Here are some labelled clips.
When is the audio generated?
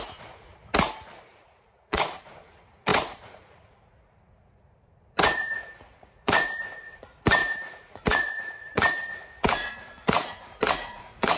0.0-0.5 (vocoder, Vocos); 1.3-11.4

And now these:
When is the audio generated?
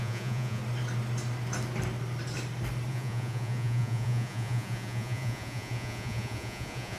0.0-0.6 (vocoder, Vocos); 2.9-7.0